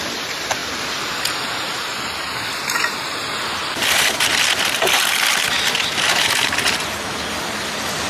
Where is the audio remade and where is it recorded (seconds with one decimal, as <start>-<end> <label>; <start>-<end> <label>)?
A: 0.0-8.1 recorded